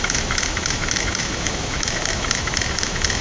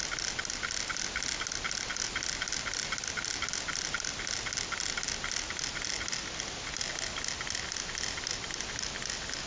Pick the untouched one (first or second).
second